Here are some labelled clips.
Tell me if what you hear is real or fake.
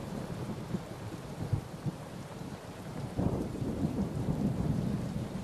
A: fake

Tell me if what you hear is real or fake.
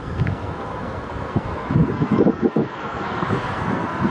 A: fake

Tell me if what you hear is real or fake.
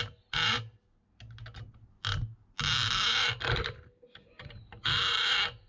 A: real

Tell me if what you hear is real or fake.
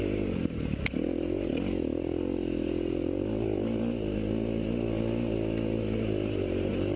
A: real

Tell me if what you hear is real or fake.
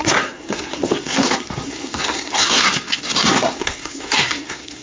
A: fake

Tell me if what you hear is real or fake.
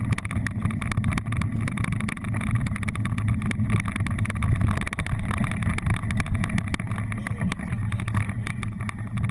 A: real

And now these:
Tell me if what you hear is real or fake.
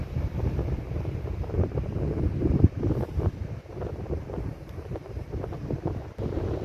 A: fake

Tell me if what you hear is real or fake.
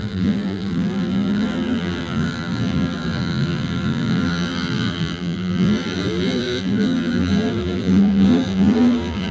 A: fake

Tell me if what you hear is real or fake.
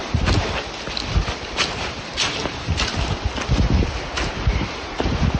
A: real